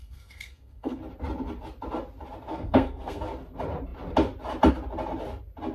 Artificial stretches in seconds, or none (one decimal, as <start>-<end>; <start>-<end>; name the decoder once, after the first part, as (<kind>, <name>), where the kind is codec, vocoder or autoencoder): 0.0-1.0 (codec, SNAC); 2.5-3.2

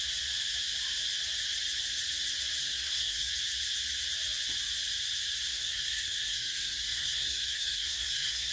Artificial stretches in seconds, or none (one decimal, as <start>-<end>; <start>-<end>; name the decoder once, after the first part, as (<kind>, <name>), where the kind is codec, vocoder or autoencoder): 2.6-3.3 (codec, SNAC); 5.5-8.5

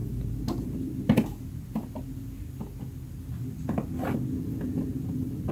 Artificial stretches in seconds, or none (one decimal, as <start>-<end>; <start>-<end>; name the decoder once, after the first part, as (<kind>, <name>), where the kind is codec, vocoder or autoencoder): none

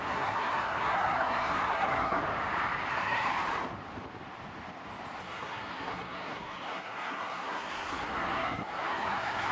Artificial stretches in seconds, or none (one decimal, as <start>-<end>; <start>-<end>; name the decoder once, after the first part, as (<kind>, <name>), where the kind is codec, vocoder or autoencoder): 0.0-2.2 (codec, SNAC); 2.9-3.3; 5.2-9.5